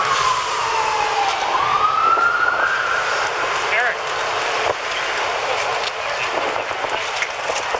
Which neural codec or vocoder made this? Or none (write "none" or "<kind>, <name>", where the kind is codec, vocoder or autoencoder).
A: none